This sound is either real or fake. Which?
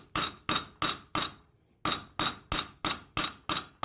real